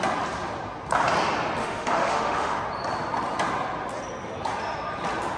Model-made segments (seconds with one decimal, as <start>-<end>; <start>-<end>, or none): 1.6-2.6